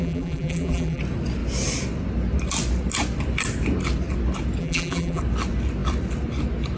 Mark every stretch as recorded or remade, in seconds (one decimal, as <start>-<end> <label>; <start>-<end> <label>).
0.0-1.0 remade; 1.0-4.6 recorded; 4.6-5.2 remade; 5.2-6.8 recorded